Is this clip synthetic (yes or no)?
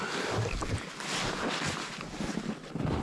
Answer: no